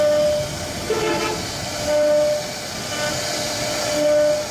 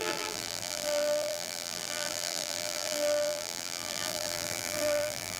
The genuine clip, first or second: first